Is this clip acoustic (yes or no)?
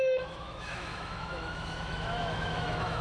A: no